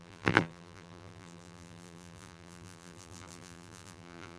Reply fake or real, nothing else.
fake